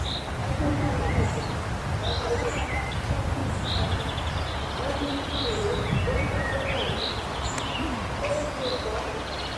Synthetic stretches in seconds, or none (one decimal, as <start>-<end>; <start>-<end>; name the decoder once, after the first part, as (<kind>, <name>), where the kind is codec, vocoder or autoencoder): 3.4-5.9 (vocoder, BigVGAN v2)